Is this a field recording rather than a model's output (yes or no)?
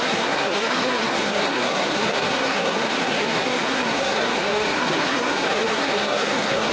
no